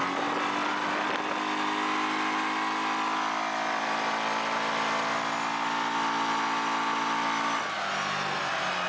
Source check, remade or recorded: recorded